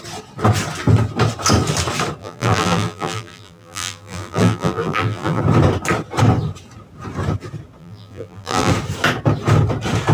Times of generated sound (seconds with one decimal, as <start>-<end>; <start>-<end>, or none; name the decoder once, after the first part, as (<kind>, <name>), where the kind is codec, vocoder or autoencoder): 2.2-5.4 (vocoder, BigVGAN v2); 7.8-8.7